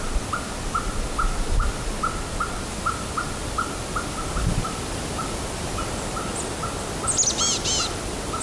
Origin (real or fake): real